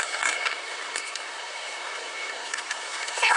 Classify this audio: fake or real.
fake